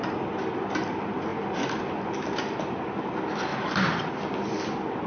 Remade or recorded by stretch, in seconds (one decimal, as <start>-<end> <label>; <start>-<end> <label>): 0.0-3.5 recorded; 3.5-4.1 remade; 4.1-5.1 recorded

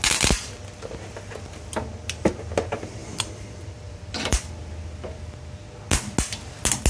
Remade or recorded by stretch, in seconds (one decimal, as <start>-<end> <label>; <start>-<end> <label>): 0.0-3.0 recorded; 3.0-4.5 remade; 4.5-6.9 recorded

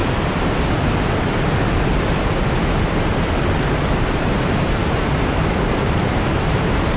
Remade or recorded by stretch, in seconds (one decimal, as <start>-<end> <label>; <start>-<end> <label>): 0.0-3.9 recorded; 3.9-4.8 remade; 4.8-5.6 recorded; 5.6-7.0 remade

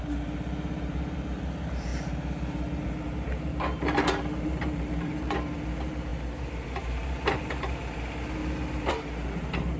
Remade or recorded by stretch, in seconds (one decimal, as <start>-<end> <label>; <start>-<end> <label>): 0.0-8.4 remade; 8.4-8.9 recorded; 8.9-9.8 remade

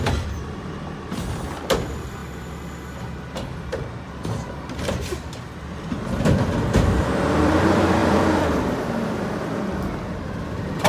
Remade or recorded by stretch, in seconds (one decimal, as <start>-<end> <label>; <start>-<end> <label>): 0.0-2.2 remade; 2.2-4.6 recorded; 4.6-10.9 remade

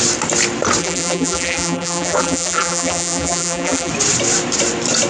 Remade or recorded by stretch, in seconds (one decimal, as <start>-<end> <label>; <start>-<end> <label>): 0.0-0.8 recorded; 0.8-3.9 remade; 3.9-5.1 recorded

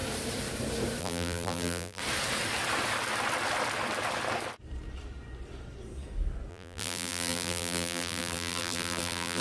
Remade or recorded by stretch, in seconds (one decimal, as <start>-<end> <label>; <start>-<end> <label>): 0.0-1.0 recorded; 1.0-2.0 remade; 2.0-6.5 recorded; 6.5-9.4 remade